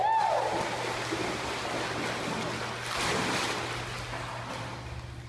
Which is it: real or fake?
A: real